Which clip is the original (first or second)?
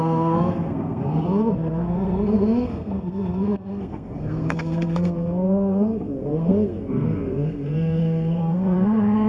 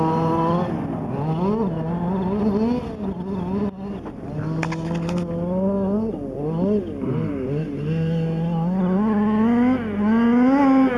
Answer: second